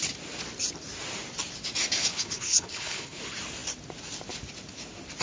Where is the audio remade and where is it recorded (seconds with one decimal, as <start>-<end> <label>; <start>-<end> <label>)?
0.0-2.1 recorded; 2.1-3.2 remade; 3.2-5.2 recorded